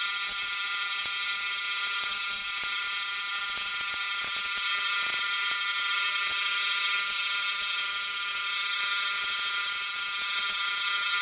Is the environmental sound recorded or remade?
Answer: remade